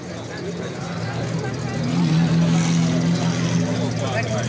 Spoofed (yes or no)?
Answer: no